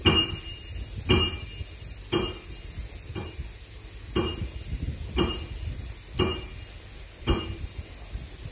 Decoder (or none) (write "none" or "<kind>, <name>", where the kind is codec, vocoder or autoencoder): none